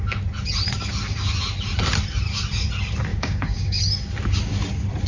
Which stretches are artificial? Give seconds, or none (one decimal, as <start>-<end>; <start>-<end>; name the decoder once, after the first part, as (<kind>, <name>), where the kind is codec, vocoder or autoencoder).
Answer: 3.1-3.8 (codec, DAC)